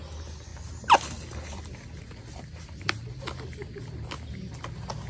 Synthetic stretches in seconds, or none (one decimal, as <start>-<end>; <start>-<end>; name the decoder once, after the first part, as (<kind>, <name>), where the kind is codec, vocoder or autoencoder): none

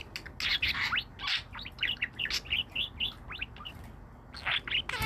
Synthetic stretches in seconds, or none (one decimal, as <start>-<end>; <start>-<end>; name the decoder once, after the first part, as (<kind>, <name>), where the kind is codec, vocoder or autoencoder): none

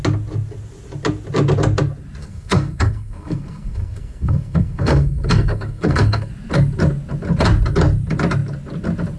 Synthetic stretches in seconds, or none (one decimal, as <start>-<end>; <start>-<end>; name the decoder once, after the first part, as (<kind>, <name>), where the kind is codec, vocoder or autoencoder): 2.2-6.3 (codec, SNAC)